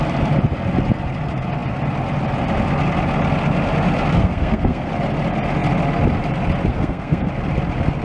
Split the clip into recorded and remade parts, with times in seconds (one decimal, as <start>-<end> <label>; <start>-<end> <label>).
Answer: 0.0-4.2 recorded; 4.2-4.9 remade; 4.9-6.7 recorded; 6.7-7.3 remade; 7.3-8.0 recorded